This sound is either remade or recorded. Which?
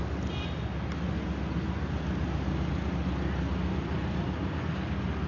recorded